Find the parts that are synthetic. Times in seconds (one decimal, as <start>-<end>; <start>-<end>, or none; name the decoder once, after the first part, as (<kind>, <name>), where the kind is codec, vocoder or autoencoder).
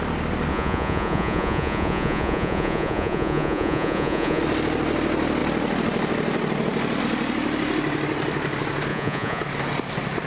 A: 0.5-4.4 (vocoder, Vocos); 8.9-9.4